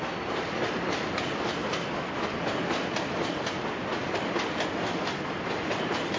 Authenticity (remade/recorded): recorded